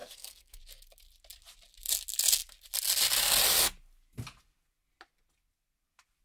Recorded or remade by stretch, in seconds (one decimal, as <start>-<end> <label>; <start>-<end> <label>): 0.0-0.6 remade; 0.6-6.2 recorded